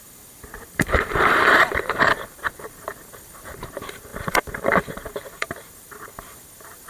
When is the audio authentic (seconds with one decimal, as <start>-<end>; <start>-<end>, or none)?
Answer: none